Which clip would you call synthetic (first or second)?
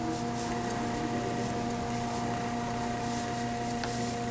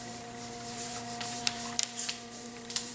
second